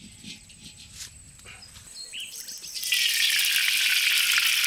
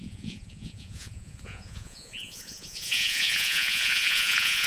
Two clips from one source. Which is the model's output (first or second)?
second